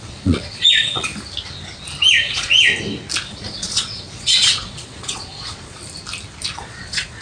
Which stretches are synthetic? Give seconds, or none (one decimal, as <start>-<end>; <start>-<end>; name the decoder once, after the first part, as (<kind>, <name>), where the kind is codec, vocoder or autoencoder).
0.0-1.1 (vocoder, Vocos); 2.2-2.7; 3.3-5.8; 6.5-7.2